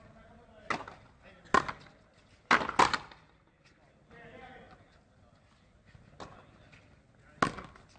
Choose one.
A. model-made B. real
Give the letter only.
B